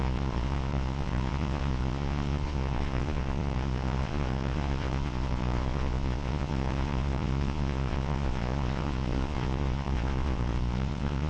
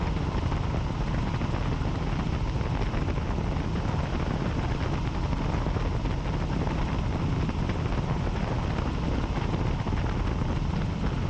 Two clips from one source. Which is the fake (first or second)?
first